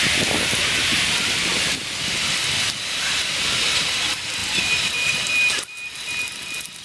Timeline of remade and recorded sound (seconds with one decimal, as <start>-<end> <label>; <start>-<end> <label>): 0.0-4.4 recorded; 4.4-5.1 remade; 5.1-6.8 recorded